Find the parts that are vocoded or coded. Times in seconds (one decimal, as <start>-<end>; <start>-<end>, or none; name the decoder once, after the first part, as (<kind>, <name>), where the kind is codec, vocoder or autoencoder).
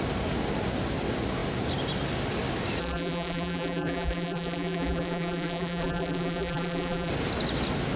2.8-7.1 (vocoder, BigVGAN v2)